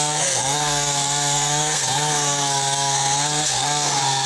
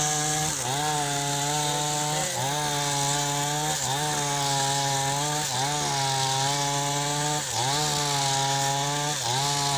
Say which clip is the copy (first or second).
first